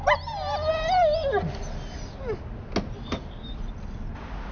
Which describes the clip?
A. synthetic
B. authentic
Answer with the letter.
B